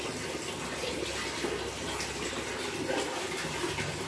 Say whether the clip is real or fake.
real